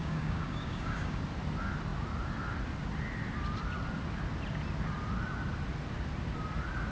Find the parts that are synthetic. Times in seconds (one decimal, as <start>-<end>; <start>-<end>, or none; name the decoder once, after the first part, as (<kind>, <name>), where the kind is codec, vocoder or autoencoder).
0.0-1.2 (codec, DAC)